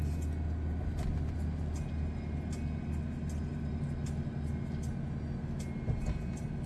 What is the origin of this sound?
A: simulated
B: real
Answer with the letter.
B